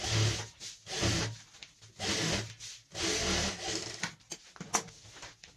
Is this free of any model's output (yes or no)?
yes